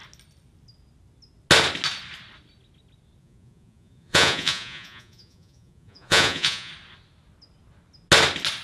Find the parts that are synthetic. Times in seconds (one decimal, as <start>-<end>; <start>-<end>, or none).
3.2-6.7